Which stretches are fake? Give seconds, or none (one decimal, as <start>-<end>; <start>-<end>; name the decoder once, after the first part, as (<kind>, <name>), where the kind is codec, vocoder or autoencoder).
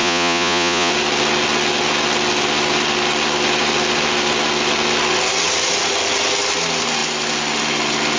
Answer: 0.0-0.9 (vocoder, Vocos)